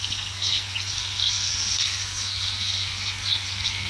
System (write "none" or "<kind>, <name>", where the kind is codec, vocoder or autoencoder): codec, SNAC